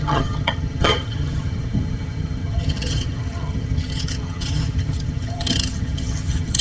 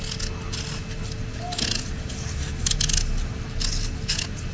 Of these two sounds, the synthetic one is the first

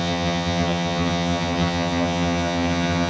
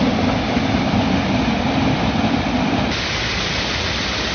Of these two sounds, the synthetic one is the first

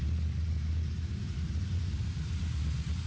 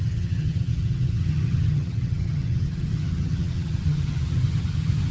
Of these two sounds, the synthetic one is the second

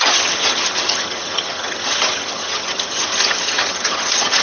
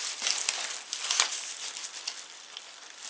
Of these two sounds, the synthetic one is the first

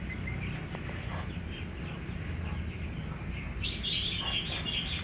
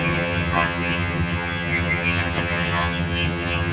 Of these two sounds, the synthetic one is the second